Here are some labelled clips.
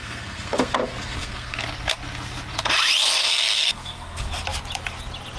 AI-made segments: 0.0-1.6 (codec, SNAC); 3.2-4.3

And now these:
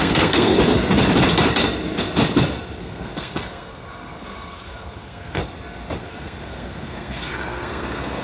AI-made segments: 0.0-0.5 (codec, SNAC); 2.8-5.4; 6.0-8.2

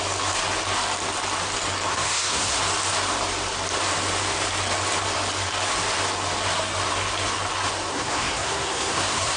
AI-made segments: 1.9-2.6 (codec, SNAC); 7.9-9.4

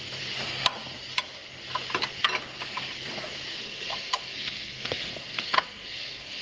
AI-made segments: 3.5-6.4 (codec, SNAC)

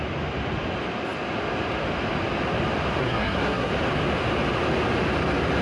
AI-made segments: 3.0-3.7 (codec, SNAC)

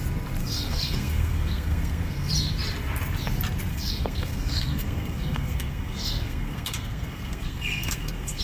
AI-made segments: 0.4-2.3 (codec, SNAC); 3.7-8.4